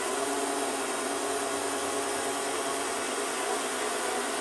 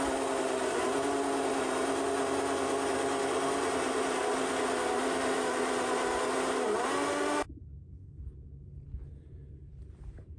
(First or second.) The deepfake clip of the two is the first